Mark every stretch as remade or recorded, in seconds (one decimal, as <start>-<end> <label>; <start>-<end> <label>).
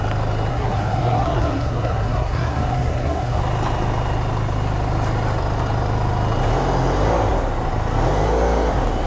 0.0-0.5 recorded; 0.5-3.4 remade; 3.4-9.1 recorded